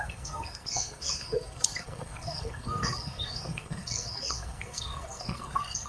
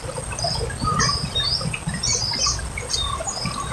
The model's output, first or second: first